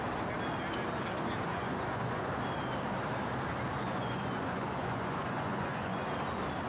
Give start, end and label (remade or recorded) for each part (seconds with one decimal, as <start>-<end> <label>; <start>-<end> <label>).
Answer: 0.0-1.5 recorded; 1.5-2.3 remade; 2.3-3.8 recorded; 3.8-6.0 remade; 6.0-6.7 recorded